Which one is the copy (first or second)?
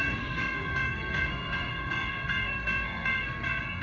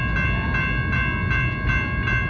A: first